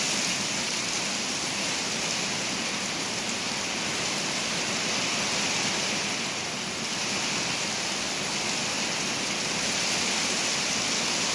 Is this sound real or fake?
real